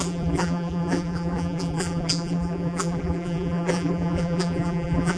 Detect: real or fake fake